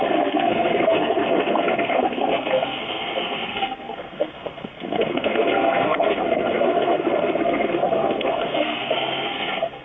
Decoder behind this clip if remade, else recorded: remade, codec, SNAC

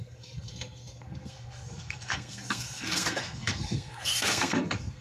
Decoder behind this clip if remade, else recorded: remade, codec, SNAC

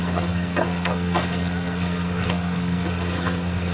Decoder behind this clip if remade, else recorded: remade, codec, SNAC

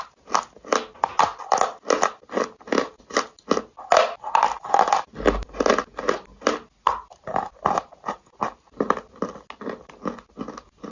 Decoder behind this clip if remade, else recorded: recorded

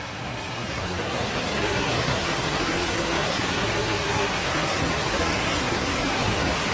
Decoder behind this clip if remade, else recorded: remade, codec, SNAC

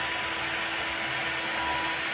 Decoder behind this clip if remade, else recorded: recorded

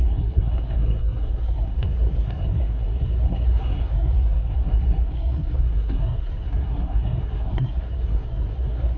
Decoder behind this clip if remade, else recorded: remade, codec, SNAC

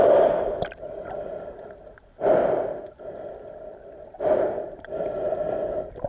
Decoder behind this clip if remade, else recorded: recorded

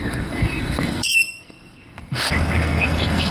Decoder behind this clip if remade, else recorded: remade, codec, SNAC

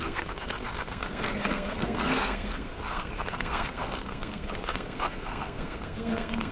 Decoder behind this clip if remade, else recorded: remade, codec, SNAC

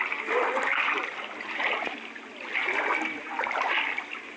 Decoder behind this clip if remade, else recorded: recorded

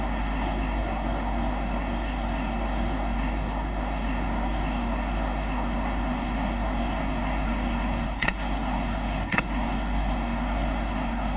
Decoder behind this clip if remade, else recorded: remade, codec, SNAC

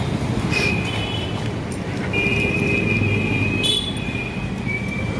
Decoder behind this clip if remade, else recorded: recorded